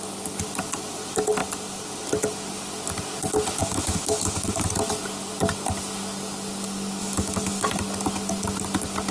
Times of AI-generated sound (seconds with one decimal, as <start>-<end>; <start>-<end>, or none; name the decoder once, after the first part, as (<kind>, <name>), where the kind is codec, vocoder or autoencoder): 3.6-4.7 (autoencoder, DAC-VAE); 7.0-7.7